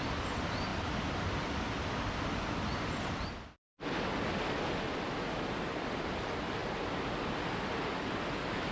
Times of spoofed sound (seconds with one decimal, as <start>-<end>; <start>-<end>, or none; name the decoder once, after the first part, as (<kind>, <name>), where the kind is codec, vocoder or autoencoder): none